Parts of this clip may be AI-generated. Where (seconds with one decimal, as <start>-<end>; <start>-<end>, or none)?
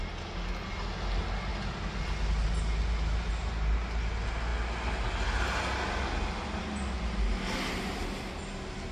none